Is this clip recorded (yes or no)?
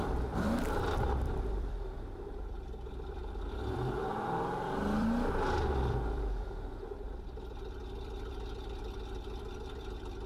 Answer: no